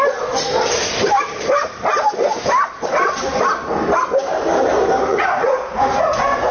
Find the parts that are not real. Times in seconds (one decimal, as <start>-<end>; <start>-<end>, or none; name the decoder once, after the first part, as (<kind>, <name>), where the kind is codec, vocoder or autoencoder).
5.1-5.8 (vocoder, Vocos)